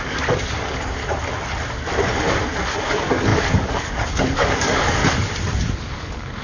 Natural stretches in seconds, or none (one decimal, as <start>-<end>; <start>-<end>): 1.0-2.8; 5.0-5.8